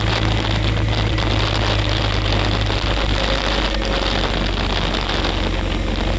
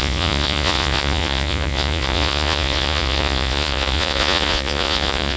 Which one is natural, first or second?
first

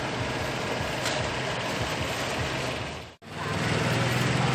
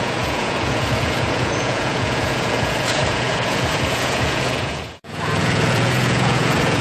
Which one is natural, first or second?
first